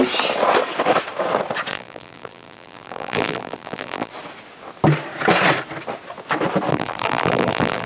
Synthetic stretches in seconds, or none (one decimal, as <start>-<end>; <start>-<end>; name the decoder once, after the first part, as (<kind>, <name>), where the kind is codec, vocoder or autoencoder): 1.7-4.1 (vocoder, BigVGAN v2); 6.7-7.9